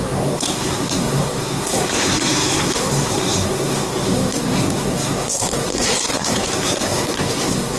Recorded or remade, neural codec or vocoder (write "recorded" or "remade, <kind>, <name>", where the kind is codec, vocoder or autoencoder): remade, codec, SNAC